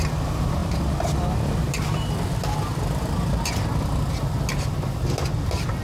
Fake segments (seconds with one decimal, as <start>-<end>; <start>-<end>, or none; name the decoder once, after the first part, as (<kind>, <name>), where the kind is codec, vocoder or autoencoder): none